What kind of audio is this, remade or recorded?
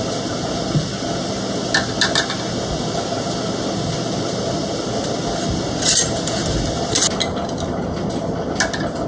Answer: recorded